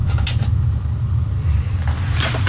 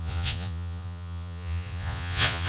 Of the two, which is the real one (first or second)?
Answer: first